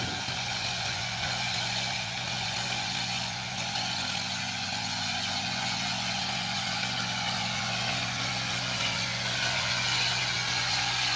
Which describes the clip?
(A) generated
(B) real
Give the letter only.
A